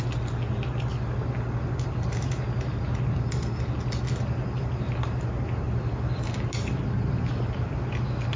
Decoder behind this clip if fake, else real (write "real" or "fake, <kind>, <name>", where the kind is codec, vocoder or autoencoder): real